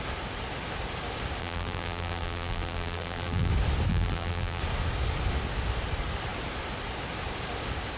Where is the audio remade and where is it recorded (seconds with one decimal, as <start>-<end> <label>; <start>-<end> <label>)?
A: 0.0-1.4 recorded; 1.4-3.5 remade; 3.5-3.9 recorded; 3.9-4.6 remade; 4.6-8.0 recorded